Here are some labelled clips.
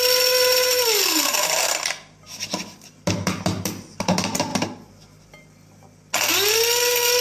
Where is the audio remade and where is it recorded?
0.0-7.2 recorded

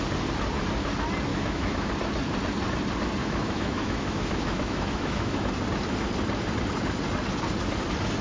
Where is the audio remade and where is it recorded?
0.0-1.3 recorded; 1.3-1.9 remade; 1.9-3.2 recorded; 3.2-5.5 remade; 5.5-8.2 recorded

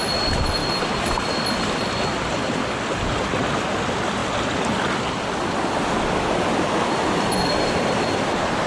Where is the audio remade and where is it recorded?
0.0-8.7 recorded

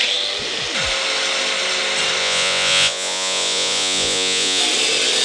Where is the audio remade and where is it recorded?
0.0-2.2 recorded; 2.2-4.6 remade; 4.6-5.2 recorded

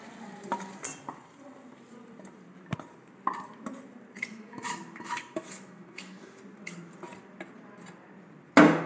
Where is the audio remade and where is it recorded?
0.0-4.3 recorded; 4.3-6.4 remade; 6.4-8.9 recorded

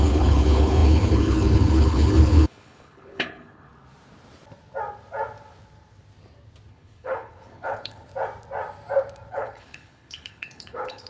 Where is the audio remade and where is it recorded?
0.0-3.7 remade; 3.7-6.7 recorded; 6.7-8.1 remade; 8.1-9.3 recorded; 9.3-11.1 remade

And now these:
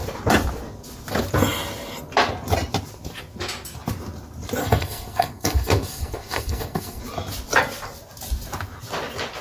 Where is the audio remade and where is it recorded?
0.0-4.6 recorded; 4.6-7.0 remade; 7.0-9.4 recorded